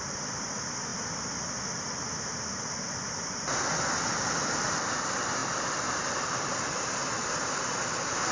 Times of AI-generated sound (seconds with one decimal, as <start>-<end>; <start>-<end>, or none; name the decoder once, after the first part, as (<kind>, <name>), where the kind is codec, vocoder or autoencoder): none